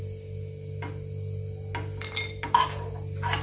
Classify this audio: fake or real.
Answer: real